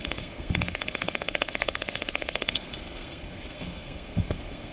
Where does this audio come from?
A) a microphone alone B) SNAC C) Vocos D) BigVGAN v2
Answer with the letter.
B